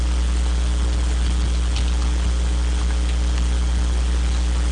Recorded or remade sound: recorded